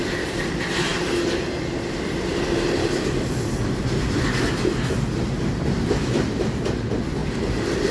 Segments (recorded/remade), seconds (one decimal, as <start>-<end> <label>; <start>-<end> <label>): 0.0-0.9 recorded; 0.9-5.2 remade; 5.2-7.9 recorded